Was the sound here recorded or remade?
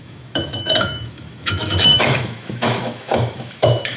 remade